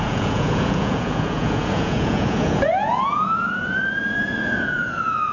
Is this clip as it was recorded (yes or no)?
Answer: no